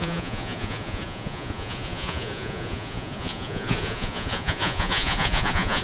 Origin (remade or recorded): remade